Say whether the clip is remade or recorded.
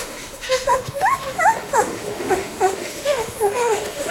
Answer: remade